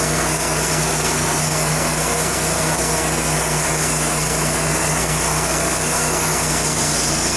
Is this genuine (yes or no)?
no